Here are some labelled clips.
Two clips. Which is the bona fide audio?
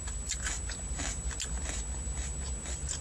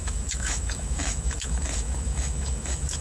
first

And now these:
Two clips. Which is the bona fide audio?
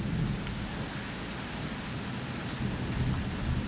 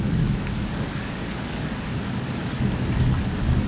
first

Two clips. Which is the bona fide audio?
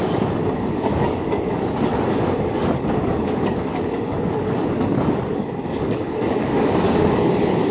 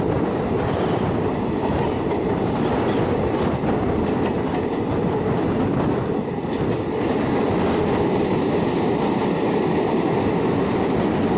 second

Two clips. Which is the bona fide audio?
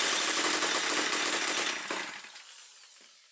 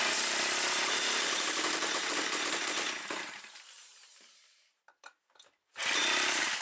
first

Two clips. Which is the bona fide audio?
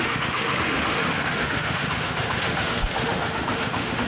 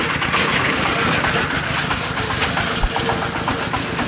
second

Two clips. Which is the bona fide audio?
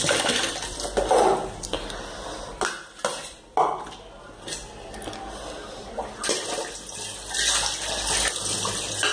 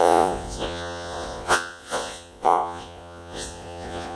first